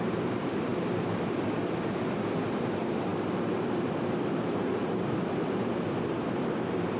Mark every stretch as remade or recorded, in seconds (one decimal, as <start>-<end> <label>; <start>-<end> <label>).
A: 0.0-0.7 remade; 0.7-2.6 recorded; 2.6-7.0 remade